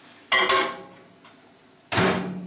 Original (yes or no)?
yes